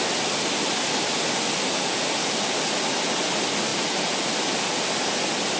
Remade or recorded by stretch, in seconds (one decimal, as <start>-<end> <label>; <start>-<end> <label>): 0.0-5.6 recorded